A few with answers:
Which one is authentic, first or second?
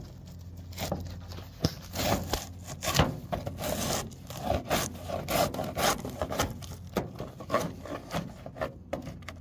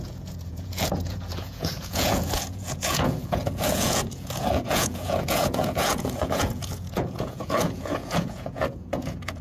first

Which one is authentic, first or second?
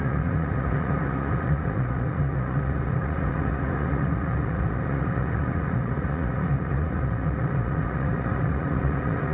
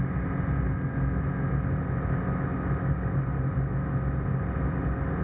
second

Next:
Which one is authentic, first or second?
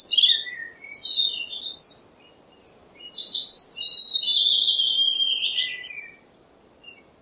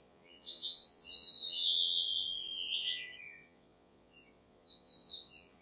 first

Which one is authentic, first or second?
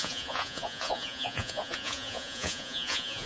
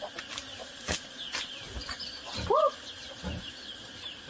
second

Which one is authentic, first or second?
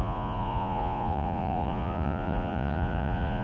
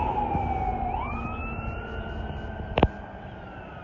second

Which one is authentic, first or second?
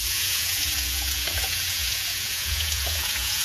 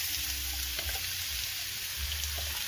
second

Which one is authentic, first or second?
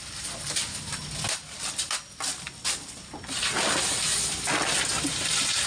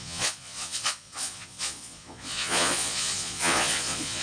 first